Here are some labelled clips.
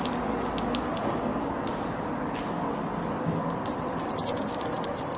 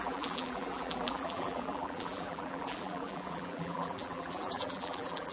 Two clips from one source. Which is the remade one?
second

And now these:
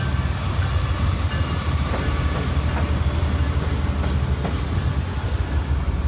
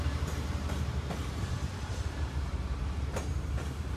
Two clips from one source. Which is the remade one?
second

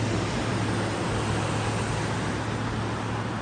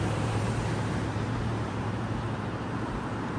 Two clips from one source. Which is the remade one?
second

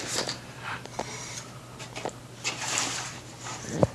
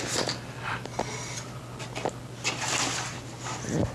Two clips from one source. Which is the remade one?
first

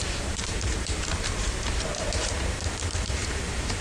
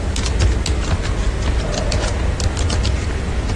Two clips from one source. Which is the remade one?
first